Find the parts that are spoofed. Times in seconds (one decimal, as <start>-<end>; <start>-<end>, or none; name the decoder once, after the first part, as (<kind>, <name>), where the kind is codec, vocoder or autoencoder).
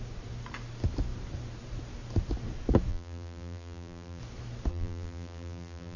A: 2.9-4.2 (vocoder, BigVGAN v2); 4.7-6.0